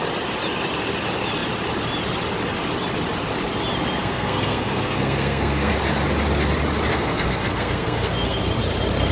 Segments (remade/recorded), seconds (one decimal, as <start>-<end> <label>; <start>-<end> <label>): 0.0-4.0 recorded; 4.0-5.7 remade; 5.7-6.9 recorded; 6.9-8.4 remade; 8.4-9.1 recorded